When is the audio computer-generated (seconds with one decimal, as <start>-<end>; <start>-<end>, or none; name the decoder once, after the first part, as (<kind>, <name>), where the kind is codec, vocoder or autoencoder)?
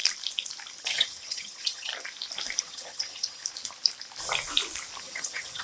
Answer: 0.8-1.9 (vocoder, HiFi-GAN); 2.6-3.4; 5.0-5.6